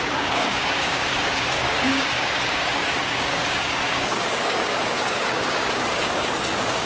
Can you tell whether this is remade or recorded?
remade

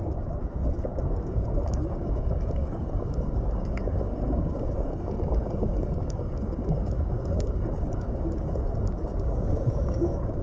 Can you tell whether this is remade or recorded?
remade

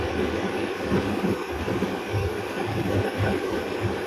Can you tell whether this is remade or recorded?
remade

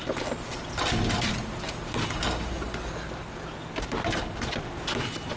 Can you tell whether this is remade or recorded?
recorded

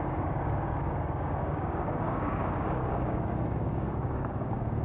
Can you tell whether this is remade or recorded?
remade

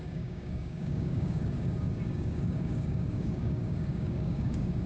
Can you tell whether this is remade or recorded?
remade